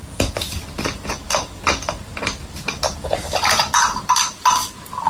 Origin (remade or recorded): recorded